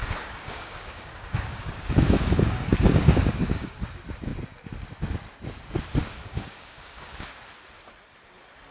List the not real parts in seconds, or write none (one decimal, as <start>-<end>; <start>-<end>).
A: 0.0-3.8; 6.0-7.4